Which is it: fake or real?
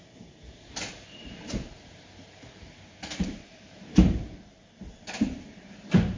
fake